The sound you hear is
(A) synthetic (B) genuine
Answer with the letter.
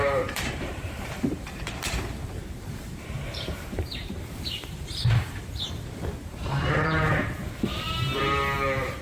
A